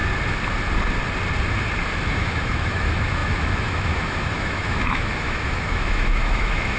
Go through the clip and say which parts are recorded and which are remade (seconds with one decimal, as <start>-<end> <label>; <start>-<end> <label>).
0.0-2.1 recorded; 2.1-6.8 remade